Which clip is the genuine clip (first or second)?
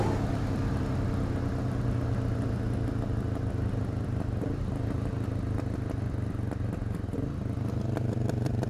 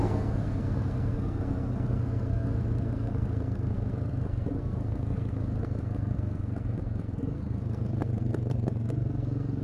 first